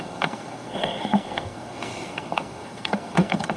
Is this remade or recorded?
remade